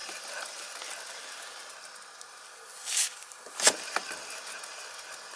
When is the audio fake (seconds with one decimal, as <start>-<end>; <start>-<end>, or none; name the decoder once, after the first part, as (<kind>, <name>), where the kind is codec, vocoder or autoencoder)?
none